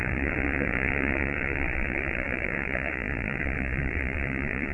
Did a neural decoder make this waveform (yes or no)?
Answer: yes